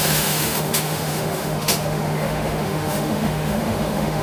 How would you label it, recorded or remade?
remade